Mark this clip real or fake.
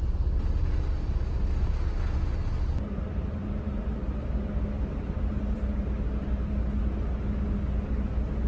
real